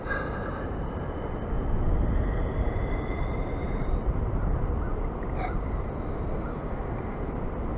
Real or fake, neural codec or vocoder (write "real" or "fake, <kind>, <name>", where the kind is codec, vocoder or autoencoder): real